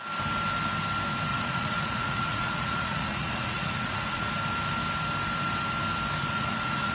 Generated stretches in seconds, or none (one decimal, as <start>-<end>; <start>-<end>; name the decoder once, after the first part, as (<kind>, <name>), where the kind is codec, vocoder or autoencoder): 1.3-4.3 (vocoder, Vocos); 6.2-6.9